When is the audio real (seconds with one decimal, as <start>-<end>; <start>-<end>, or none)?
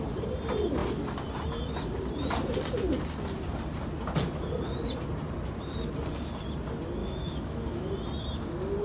0.0-7.0; 7.9-8.8